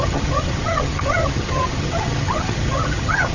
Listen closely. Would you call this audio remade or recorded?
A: remade